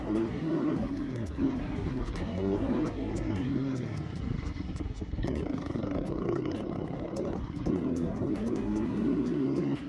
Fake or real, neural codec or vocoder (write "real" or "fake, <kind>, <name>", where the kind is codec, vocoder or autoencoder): fake, codec, SNAC